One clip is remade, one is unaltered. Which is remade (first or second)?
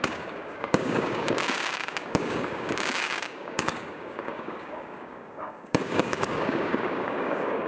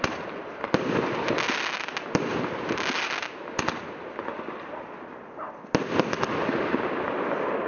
first